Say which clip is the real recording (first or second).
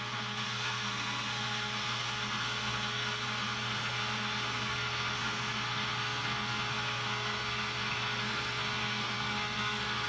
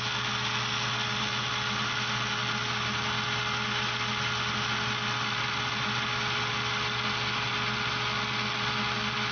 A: second